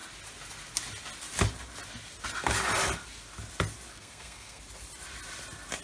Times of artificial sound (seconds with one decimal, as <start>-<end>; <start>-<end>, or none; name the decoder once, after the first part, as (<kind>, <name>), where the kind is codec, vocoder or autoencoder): 3.9-4.6 (codec, SNAC)